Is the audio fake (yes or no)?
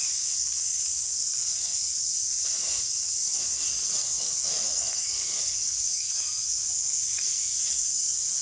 yes